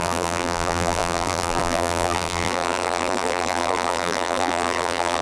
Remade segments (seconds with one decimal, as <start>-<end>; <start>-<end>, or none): 0.0-5.2